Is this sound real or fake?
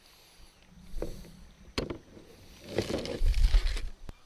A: real